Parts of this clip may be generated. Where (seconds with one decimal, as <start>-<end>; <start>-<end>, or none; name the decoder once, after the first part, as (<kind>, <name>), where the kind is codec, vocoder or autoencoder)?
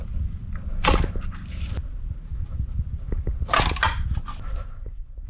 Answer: none